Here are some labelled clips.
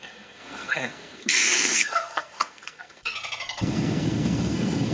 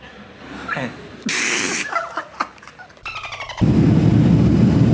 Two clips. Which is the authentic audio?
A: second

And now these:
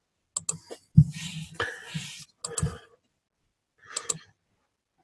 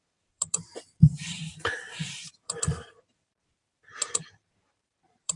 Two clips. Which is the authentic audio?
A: first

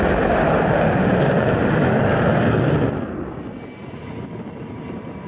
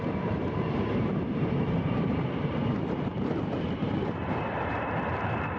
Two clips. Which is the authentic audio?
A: first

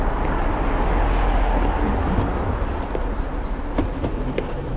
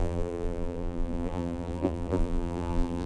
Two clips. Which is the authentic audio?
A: first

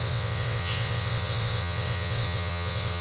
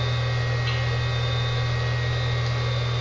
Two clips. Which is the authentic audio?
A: second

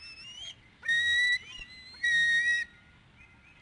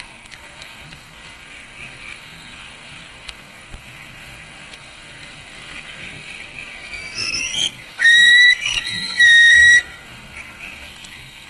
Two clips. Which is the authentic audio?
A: first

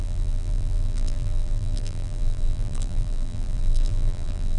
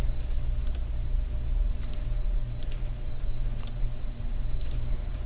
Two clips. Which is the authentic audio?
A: second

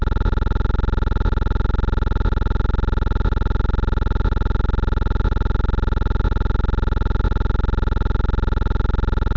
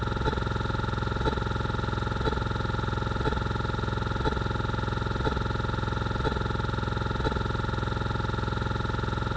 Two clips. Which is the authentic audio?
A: first